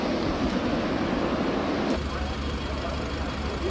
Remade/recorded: recorded